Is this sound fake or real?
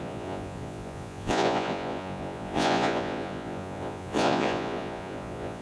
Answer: fake